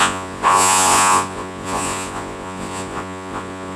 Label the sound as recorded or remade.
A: remade